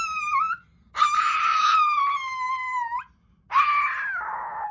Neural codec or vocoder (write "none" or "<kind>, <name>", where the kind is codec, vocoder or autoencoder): none